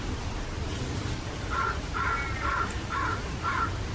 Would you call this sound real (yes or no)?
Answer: yes